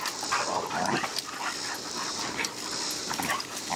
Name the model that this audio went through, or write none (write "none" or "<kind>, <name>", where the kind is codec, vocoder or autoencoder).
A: vocoder, BigVGAN v2